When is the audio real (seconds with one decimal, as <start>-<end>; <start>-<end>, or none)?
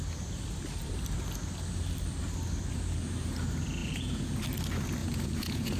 0.0-3.8; 4.4-5.0